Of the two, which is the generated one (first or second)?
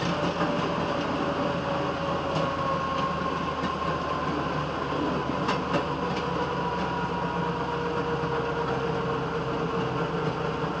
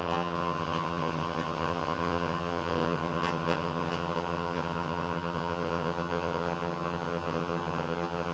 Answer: second